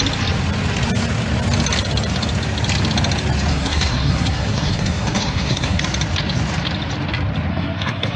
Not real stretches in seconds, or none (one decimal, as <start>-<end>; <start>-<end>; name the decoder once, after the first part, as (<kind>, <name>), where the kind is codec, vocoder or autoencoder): 3.5-5.8 (codec, SNAC); 7.5-8.2